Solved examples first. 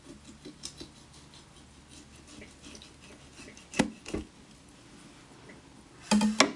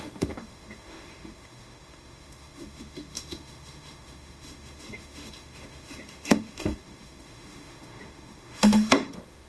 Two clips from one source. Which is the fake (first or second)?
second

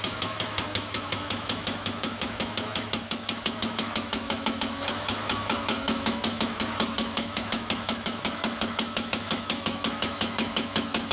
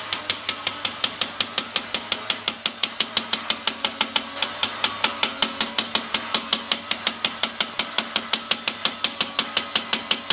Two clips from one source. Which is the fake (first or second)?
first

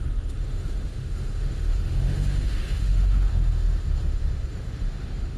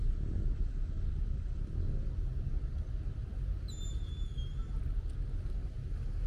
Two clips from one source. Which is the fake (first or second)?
first